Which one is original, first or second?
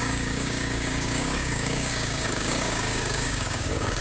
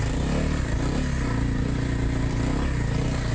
second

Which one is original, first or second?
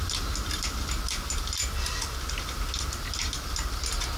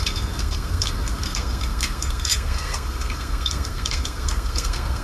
first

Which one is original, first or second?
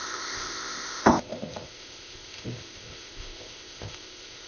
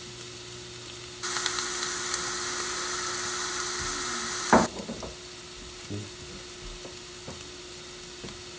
second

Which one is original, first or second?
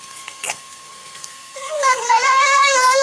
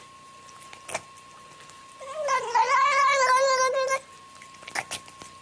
second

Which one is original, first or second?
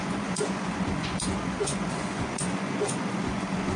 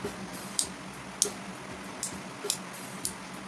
second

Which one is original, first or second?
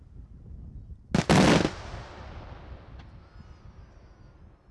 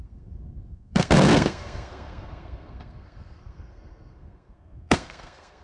first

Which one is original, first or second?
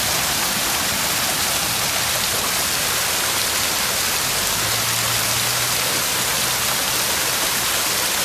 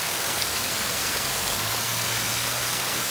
first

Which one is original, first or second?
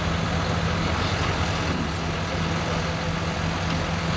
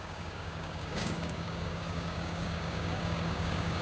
first